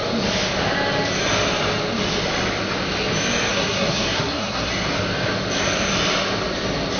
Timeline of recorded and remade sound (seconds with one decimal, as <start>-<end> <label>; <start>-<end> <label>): 0.0-3.5 recorded; 3.5-4.7 remade; 4.7-7.0 recorded